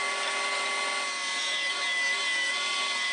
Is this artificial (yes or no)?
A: no